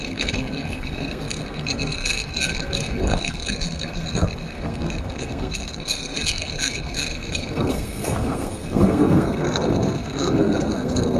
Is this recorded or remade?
remade